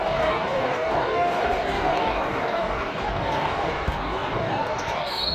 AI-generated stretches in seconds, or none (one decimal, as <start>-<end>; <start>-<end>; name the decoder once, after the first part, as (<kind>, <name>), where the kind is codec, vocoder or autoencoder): 0.0-5.3 (codec, DAC)